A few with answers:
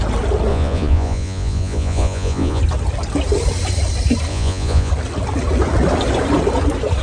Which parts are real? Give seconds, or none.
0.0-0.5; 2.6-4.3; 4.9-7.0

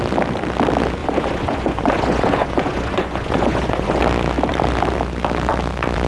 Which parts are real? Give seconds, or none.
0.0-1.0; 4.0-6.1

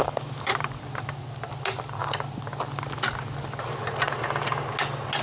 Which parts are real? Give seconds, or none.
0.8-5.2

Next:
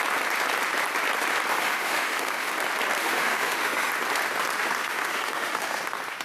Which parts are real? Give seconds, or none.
0.0-1.5; 2.5-3.0; 3.9-4.8; 5.8-6.2

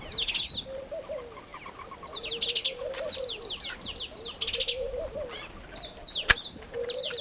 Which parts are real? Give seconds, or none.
0.0-7.2